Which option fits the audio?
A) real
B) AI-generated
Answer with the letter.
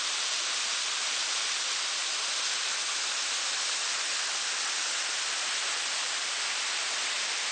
A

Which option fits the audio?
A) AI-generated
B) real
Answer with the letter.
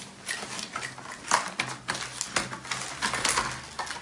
B